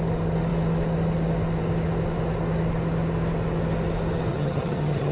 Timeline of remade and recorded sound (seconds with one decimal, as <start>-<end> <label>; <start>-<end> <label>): 0.0-4.3 recorded; 4.3-5.1 remade

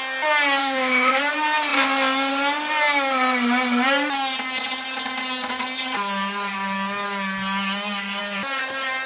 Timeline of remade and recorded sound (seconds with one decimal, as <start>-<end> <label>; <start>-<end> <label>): 0.0-0.6 recorded; 0.6-1.2 remade; 1.2-9.1 recorded

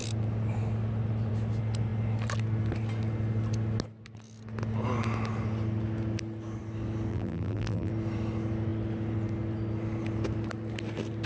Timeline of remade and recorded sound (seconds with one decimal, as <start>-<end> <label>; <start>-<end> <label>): 0.0-7.1 recorded; 7.1-7.9 remade; 7.9-11.3 recorded

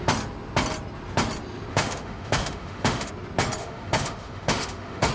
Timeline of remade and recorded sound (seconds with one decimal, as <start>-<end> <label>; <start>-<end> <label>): 0.0-1.7 recorded; 1.7-3.1 remade; 3.1-3.6 recorded; 3.6-5.1 remade

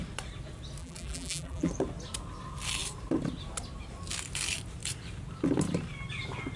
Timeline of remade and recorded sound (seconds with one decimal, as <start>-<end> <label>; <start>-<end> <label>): 0.0-0.8 recorded; 0.8-1.7 remade; 1.7-6.6 recorded

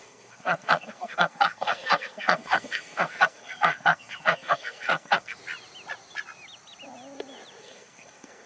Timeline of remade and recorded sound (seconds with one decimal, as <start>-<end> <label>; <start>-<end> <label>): 0.0-5.4 remade; 5.4-7.6 recorded; 7.6-8.5 remade